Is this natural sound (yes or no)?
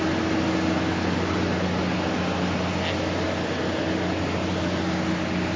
yes